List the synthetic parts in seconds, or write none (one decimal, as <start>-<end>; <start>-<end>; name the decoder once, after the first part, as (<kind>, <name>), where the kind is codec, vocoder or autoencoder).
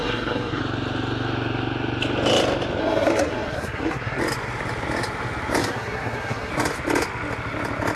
0.0-0.6 (codec, SNAC); 2.8-4.2; 5.6-6.5